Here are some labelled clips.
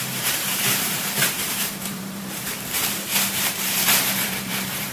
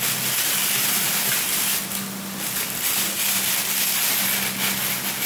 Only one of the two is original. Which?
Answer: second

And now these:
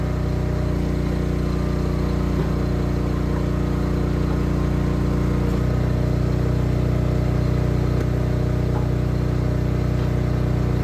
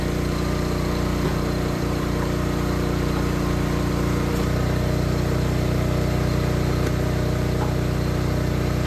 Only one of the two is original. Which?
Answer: first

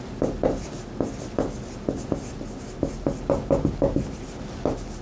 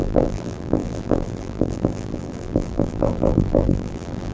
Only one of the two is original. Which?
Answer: first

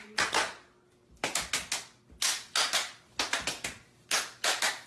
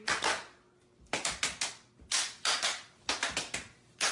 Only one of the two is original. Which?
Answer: first